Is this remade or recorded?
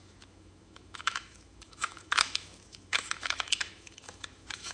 remade